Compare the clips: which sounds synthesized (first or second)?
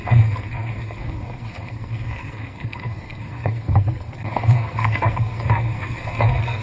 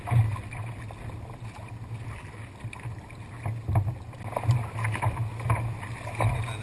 first